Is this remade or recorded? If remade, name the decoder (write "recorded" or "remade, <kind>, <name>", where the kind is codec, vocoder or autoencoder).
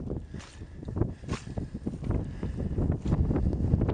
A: recorded